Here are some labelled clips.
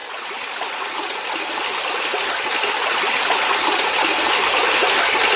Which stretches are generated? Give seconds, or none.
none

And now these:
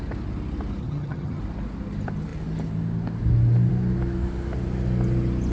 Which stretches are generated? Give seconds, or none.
0.8-1.4 (vocoder, HiFi-GAN)

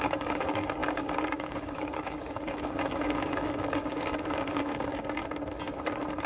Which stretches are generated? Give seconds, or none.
0.0-5.2 (codec, DAC)

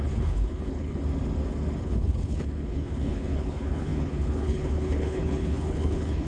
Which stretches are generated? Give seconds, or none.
0.0-1.0 (codec, HILCodec); 1.8-6.3